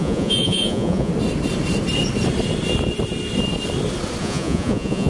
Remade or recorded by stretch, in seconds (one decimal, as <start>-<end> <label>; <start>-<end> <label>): 0.0-1.1 remade; 1.1-4.2 recorded; 4.2-5.1 remade

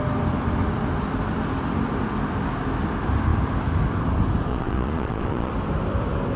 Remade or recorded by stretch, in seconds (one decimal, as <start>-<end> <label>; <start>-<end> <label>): 0.0-4.5 recorded; 4.5-5.5 remade; 5.5-6.4 recorded

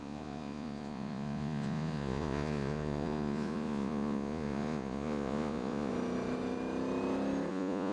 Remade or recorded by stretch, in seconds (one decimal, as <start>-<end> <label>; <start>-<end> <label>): 0.0-5.9 remade; 5.9-7.5 recorded; 7.5-7.9 remade

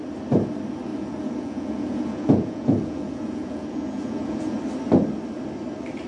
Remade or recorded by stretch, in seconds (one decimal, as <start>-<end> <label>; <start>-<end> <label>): 0.0-0.9 recorded; 0.9-4.6 remade; 4.6-6.1 recorded